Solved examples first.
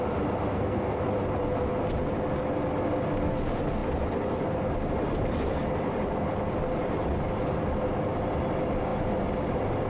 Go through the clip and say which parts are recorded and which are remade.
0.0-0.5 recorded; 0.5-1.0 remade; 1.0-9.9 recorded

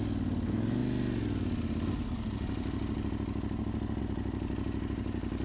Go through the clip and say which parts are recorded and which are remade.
0.0-5.4 recorded

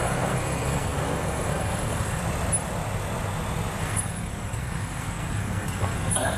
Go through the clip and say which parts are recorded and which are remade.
0.0-2.2 remade; 2.2-3.8 recorded; 3.8-6.4 remade

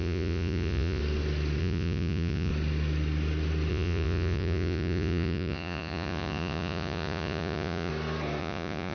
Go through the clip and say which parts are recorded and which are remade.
0.0-1.0 remade; 1.0-1.6 recorded; 1.6-2.5 remade; 2.5-3.7 recorded; 3.7-7.9 remade; 7.9-8.4 recorded; 8.4-8.9 remade

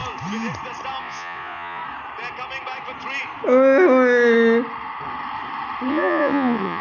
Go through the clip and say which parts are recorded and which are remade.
0.0-1.0 recorded; 1.0-1.8 remade; 1.8-5.9 recorded; 5.9-6.8 remade

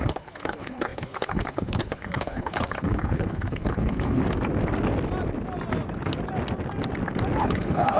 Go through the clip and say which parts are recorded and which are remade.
0.0-4.2 remade; 4.2-7.4 recorded; 7.4-8.0 remade